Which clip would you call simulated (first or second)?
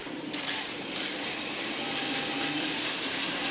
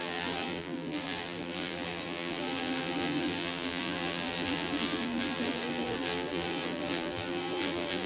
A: second